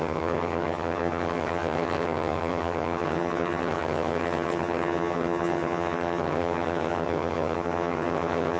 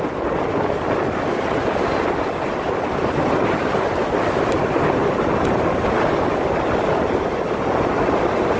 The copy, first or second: first